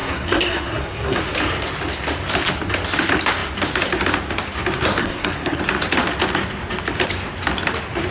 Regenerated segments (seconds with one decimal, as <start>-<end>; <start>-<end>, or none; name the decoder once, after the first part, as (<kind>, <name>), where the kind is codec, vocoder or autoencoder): 0.0-1.2 (codec, SNAC); 5.0-5.6